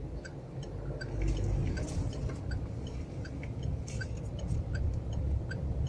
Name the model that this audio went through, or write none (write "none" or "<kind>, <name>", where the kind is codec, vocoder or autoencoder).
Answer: none